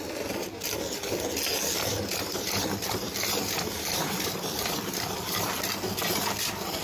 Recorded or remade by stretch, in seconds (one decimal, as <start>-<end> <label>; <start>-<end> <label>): 0.0-1.9 recorded; 1.9-6.0 remade; 6.0-6.8 recorded